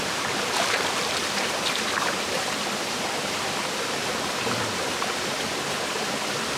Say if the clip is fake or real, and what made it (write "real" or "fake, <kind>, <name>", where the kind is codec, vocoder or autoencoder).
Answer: fake, vocoder, BigVGAN v2